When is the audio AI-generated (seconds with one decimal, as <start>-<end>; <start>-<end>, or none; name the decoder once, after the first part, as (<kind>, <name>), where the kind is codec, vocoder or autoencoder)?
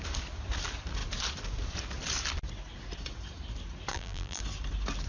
3.9-4.4 (vocoder, BigVGAN v2)